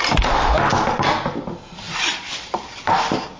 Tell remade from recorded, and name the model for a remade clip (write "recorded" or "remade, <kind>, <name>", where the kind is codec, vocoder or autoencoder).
recorded